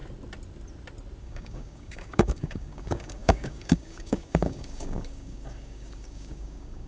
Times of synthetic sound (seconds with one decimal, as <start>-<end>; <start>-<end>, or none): 1.2-6.9